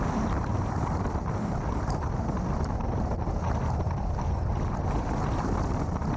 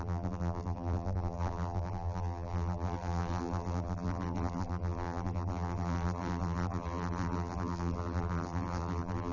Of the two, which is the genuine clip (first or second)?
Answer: first